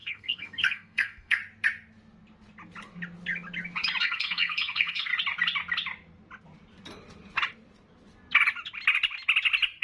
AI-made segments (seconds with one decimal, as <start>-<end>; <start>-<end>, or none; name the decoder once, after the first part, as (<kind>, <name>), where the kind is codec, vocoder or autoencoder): 0.0-1.4 (codec, SNAC); 4.0-5.1